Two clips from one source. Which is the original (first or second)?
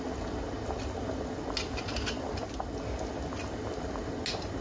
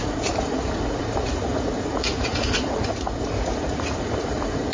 first